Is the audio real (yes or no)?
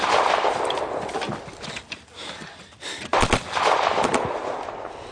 yes